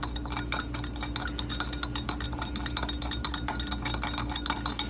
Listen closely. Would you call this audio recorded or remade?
recorded